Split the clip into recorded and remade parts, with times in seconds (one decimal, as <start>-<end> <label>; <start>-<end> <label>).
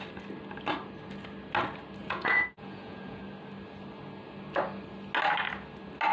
0.0-2.0 recorded; 2.0-3.2 remade; 3.2-6.1 recorded